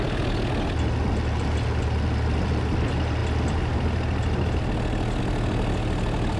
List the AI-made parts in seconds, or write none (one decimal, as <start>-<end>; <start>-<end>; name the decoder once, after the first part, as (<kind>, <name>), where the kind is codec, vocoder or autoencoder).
none